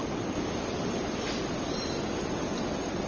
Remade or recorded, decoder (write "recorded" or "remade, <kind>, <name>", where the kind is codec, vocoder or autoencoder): recorded